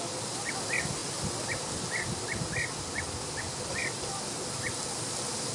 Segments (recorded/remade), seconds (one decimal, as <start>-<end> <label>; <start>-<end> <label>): 0.0-5.5 recorded